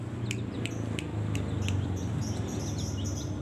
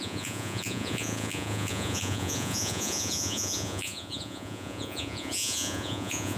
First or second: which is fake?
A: second